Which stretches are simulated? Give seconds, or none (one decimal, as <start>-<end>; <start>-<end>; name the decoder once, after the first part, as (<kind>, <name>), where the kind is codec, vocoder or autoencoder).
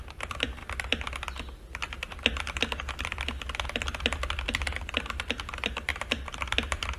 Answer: 0.0-0.6 (vocoder, BigVGAN v2); 4.8-5.9; 6.5-7.0